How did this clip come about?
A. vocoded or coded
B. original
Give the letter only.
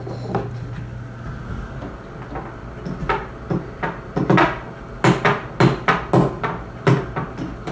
B